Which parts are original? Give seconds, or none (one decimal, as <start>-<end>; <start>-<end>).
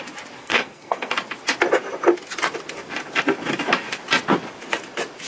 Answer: 0.0-0.4; 1.1-5.3